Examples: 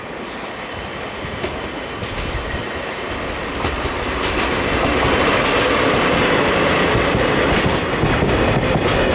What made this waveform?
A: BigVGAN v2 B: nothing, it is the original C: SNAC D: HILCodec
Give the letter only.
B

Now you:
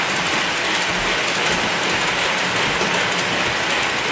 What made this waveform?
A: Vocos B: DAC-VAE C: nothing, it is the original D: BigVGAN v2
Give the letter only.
C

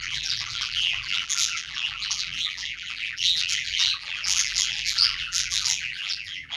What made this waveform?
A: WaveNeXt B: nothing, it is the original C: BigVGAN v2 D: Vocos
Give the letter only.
C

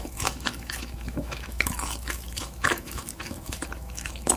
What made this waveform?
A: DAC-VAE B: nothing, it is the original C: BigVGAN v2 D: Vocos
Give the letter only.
A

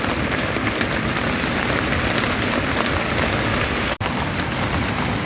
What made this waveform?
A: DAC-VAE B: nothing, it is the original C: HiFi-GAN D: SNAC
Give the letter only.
B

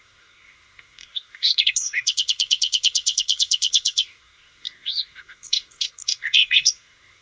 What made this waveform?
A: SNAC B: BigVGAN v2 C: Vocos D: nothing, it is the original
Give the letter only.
A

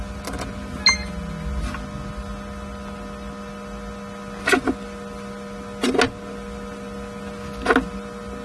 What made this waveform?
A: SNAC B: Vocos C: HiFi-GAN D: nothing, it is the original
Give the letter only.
D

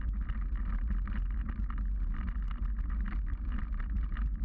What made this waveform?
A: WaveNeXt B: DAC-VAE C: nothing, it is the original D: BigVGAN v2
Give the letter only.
C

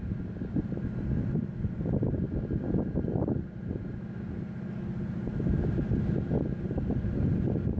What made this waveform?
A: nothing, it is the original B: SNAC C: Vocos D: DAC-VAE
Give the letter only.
A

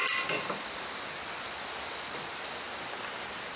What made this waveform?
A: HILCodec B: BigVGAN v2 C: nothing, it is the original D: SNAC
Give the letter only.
C